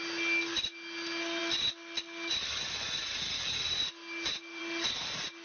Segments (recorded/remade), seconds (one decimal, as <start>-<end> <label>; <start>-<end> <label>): 0.0-5.4 recorded